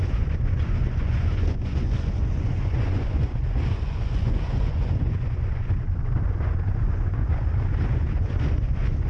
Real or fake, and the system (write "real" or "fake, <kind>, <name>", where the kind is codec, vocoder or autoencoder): fake, vocoder, Vocos